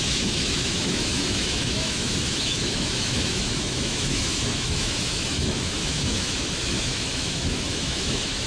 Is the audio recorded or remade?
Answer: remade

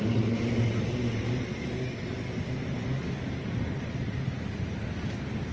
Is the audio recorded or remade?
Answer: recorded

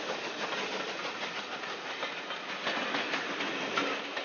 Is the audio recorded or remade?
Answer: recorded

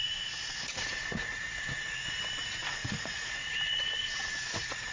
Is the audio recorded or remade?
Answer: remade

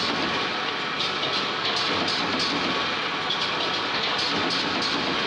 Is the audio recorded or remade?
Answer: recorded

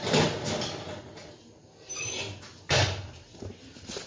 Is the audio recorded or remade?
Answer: recorded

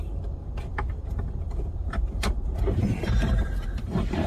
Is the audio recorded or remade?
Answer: remade